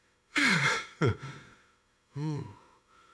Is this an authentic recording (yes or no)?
no